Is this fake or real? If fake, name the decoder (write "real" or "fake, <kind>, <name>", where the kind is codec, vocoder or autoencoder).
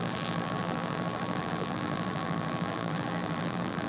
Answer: fake, vocoder, BigVGAN v2